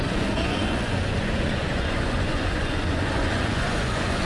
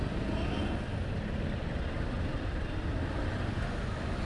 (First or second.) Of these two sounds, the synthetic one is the first